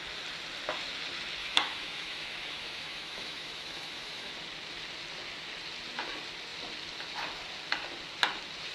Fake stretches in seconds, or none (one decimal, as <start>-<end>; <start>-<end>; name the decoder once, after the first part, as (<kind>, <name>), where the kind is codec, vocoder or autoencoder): 1.4-4.3 (autoencoder, DAC-VAE)